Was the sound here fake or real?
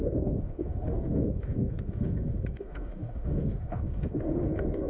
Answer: fake